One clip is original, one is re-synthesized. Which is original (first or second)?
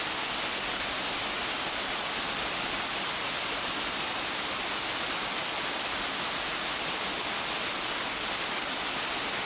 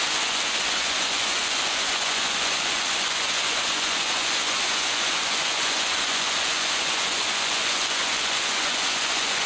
first